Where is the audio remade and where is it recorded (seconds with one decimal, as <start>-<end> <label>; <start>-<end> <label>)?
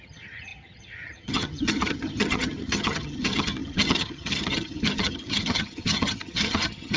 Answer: 0.0-7.0 remade